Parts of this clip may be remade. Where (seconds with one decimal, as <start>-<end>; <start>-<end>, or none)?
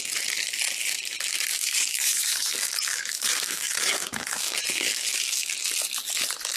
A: 1.5-5.5